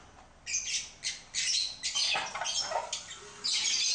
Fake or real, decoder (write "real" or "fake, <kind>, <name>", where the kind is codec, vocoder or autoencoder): real